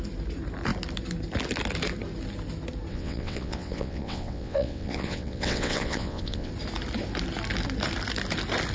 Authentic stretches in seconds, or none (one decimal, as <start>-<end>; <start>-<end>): 0.0-2.9; 6.5-8.7